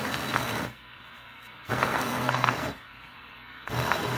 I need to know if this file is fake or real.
fake